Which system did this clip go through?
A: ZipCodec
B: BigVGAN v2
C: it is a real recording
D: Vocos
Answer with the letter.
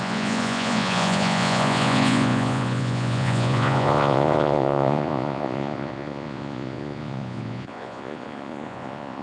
D